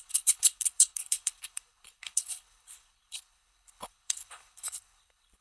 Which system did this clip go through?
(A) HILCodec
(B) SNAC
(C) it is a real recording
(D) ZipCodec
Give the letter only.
A